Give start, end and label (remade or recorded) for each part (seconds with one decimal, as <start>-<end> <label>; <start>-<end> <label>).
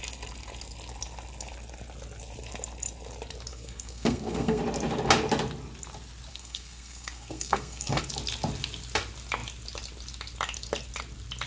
0.0-3.5 recorded; 3.5-4.6 remade; 4.6-6.3 recorded; 6.3-8.0 remade; 8.0-11.5 recorded